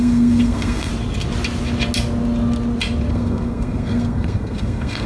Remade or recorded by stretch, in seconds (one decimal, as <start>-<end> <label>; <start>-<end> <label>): 0.0-0.9 remade; 0.9-3.1 recorded; 3.1-5.1 remade